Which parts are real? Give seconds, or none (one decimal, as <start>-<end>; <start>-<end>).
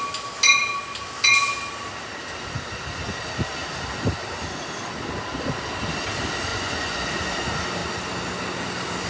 0.0-6.5; 7.1-9.1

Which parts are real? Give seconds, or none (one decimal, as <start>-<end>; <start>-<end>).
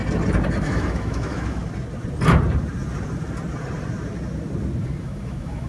0.0-0.6; 1.6-5.0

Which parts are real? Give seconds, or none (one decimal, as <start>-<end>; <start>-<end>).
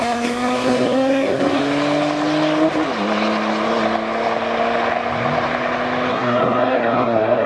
1.6-6.1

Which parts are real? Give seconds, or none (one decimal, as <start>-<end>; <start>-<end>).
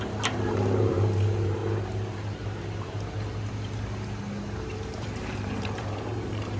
1.6-4.7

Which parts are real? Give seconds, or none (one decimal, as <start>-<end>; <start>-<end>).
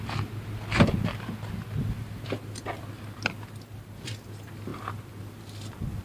0.0-6.0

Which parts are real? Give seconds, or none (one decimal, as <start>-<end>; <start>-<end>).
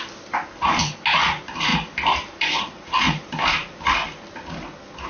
0.0-5.1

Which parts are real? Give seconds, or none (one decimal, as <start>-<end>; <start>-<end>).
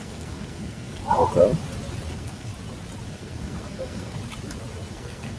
1.0-2.1; 2.5-3.1; 4.2-4.9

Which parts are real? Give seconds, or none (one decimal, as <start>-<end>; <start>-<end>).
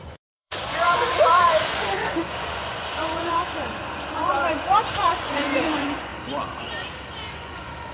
6.1-7.3